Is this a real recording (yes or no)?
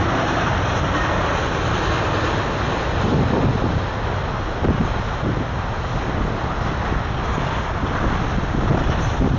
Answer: yes